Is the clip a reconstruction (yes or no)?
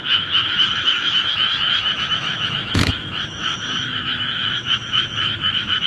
yes